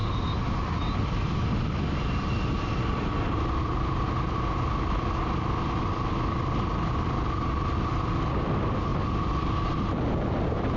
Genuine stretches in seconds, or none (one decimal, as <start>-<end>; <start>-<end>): 3.2-8.9